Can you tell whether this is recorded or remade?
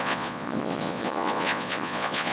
remade